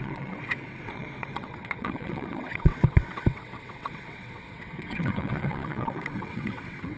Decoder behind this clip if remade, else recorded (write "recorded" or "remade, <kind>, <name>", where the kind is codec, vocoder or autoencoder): remade, vocoder, WaveNeXt